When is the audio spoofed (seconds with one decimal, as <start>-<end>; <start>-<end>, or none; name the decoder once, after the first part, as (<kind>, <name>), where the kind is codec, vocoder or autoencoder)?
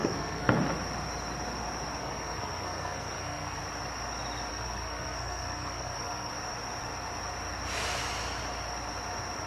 0.0-0.6 (codec, SNAC); 2.0-3.6; 4.5-6.3